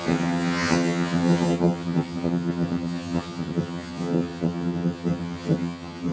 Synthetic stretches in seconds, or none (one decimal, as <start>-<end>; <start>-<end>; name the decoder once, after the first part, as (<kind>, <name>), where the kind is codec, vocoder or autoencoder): 0.0-6.1 (vocoder, HiFi-GAN)